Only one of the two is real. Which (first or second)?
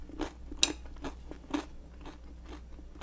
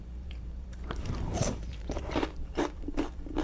first